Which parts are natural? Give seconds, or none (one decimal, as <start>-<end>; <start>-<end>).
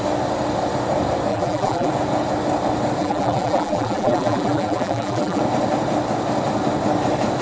0.0-1.3; 1.9-3.0; 5.4-7.4